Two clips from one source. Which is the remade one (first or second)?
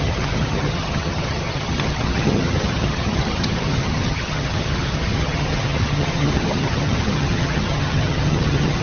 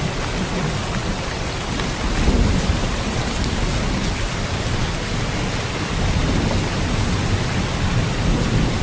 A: first